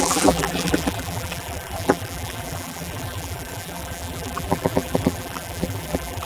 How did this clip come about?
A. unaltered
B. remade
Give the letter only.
B